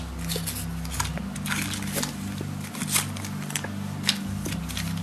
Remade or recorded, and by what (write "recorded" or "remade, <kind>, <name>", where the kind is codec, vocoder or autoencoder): recorded